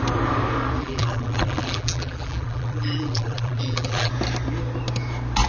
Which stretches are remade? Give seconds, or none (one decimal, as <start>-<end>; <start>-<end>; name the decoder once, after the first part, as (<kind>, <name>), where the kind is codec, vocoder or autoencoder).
0.8-4.1 (vocoder, BigVGAN v2)